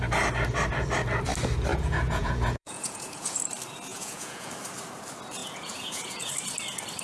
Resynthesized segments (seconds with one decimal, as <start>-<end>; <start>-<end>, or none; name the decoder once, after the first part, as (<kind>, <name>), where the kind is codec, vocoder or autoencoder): 1.7-3.4 (vocoder, Vocos); 3.9-4.5; 5.4-6.3